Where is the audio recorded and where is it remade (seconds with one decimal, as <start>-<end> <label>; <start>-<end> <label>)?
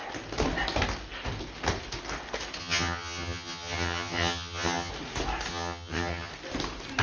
0.0-2.6 recorded; 2.6-4.9 remade; 4.9-5.5 recorded; 5.5-6.3 remade; 6.3-7.0 recorded